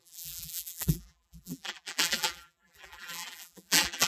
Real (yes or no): no